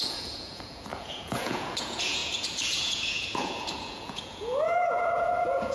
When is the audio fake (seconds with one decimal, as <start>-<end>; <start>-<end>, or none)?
0.0-5.7

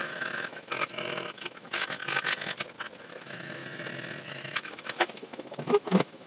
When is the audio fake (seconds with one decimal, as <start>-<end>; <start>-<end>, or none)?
0.0-2.0; 3.0-3.6; 4.3-6.3

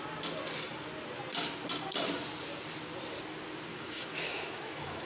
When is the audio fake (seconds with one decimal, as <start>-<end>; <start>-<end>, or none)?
3.7-5.1

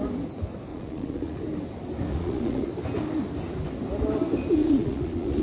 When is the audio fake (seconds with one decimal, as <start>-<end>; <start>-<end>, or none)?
0.7-1.4; 2.1-2.7; 4.6-5.4